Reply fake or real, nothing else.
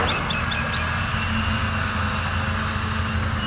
real